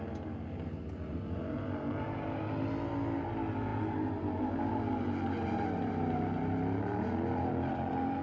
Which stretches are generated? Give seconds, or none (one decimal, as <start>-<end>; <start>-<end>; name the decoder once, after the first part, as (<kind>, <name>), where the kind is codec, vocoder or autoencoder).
none